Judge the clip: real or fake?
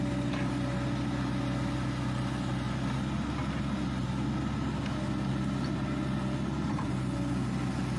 real